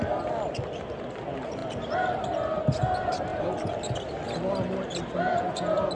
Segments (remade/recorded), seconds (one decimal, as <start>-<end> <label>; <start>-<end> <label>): 0.0-5.9 recorded